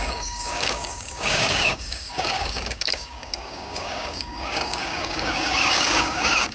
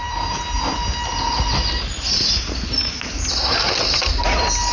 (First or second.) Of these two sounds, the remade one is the first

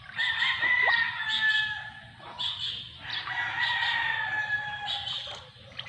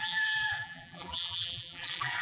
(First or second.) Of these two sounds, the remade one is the second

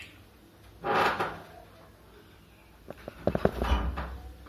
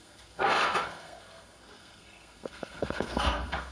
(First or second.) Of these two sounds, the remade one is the second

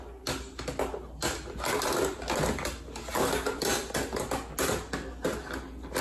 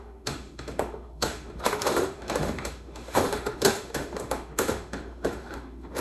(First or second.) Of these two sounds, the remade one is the second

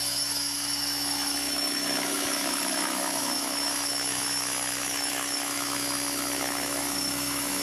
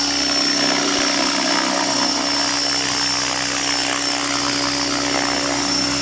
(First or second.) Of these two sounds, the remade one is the first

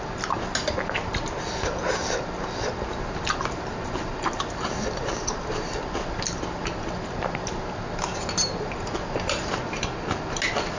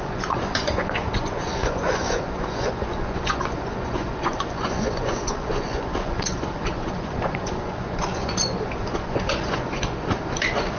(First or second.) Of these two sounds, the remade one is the second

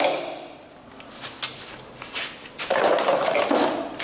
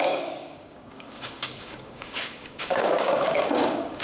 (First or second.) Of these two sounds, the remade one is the second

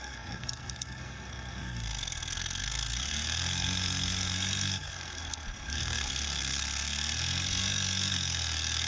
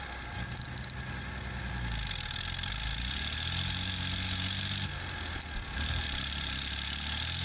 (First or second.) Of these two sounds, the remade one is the first